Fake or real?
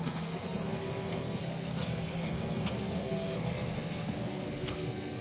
fake